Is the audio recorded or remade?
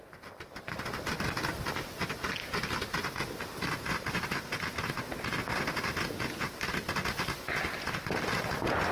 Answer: recorded